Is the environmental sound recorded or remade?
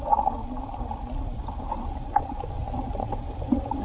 recorded